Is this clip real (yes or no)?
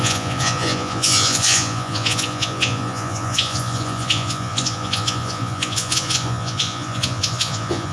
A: no